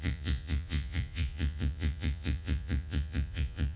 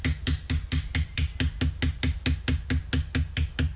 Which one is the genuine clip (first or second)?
second